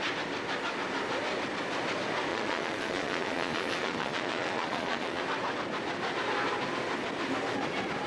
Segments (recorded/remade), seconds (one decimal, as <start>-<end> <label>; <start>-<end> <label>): 0.0-2.3 recorded; 2.3-5.2 remade; 5.2-8.1 recorded